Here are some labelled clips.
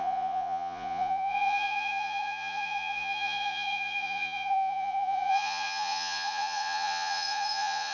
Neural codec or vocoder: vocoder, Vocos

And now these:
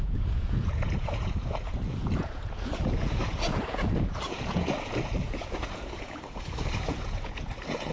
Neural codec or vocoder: vocoder, Vocos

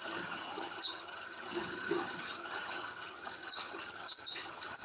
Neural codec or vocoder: vocoder, HiFi-GAN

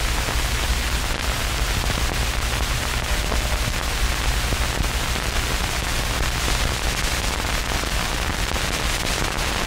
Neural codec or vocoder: none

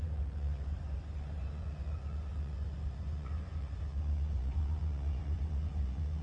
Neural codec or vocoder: vocoder, Vocos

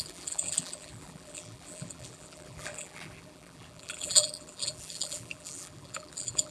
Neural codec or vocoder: vocoder, BigVGAN v2